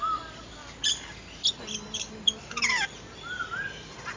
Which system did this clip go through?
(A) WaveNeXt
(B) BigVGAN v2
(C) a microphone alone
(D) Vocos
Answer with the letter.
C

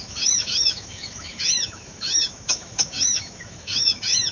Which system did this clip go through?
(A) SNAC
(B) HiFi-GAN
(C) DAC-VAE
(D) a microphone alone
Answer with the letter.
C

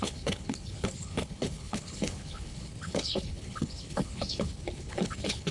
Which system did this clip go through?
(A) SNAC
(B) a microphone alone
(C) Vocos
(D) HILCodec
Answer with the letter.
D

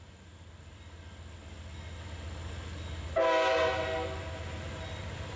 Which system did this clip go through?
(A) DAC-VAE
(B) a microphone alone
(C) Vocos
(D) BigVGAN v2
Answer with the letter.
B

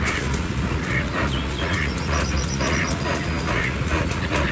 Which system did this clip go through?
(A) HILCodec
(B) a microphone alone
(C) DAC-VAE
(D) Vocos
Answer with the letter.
D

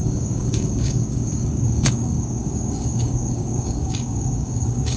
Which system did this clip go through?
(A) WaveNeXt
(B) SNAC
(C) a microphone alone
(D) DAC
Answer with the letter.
D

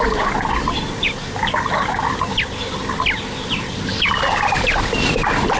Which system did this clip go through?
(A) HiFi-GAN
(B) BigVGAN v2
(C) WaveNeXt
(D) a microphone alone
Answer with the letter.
D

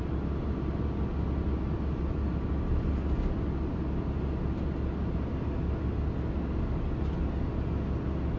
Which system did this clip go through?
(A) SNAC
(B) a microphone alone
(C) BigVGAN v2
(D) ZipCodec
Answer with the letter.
B